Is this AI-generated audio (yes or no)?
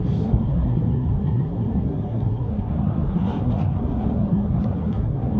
yes